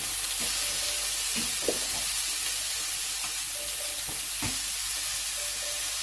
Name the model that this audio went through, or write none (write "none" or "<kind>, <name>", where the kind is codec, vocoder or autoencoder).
none